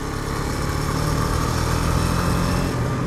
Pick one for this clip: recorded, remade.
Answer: recorded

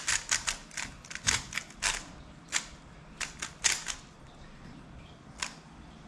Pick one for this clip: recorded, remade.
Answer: recorded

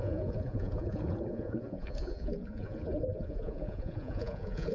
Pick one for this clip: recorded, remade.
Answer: remade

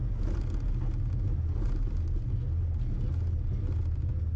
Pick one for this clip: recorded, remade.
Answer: recorded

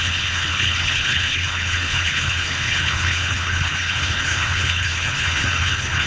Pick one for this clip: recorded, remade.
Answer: remade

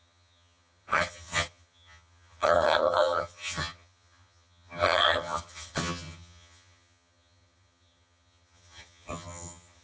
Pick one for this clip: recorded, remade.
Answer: remade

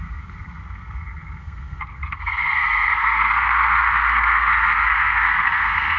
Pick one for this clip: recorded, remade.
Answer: remade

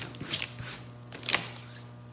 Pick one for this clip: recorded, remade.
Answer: recorded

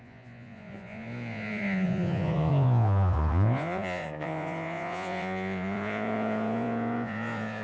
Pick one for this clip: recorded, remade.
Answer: remade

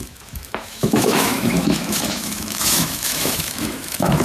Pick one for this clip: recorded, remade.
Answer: remade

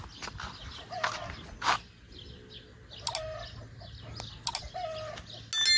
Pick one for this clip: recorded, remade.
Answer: recorded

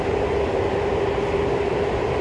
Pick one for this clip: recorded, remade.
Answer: recorded